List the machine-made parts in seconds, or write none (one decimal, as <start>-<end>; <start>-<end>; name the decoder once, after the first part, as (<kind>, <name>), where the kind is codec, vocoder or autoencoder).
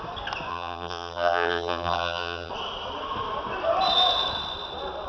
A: 0.5-2.5 (vocoder, BigVGAN v2)